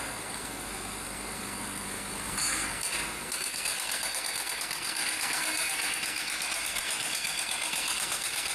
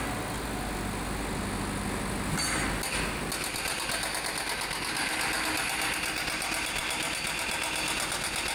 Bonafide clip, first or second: second